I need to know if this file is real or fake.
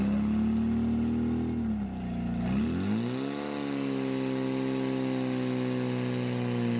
real